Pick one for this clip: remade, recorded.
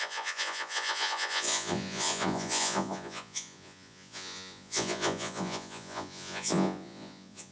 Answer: remade